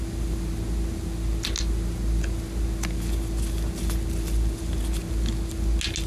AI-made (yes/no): no